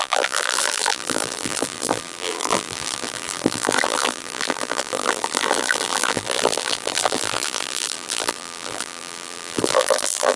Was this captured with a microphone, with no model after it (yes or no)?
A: no